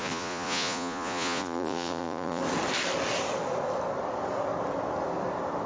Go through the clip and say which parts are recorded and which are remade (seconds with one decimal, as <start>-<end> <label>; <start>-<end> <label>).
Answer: 0.0-2.4 remade; 2.4-5.7 recorded